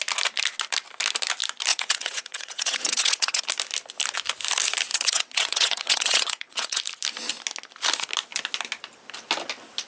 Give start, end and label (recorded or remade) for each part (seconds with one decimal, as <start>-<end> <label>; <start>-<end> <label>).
0.0-1.7 recorded; 1.7-3.4 remade; 3.4-4.9 recorded; 4.9-6.8 remade; 6.8-9.9 recorded